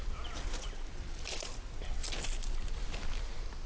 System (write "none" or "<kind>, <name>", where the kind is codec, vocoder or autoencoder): none